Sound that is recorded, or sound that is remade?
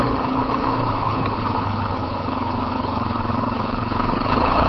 remade